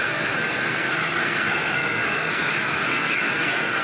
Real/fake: fake